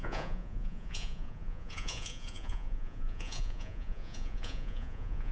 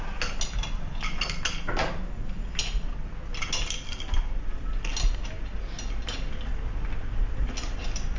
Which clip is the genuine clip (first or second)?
second